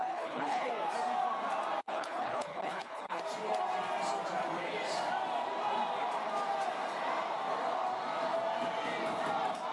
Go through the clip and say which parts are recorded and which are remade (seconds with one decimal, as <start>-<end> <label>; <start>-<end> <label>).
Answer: 0.0-0.7 remade; 0.7-1.8 recorded; 1.8-3.2 remade; 3.2-9.7 recorded